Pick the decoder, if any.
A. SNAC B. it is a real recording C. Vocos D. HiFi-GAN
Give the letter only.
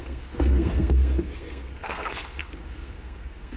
A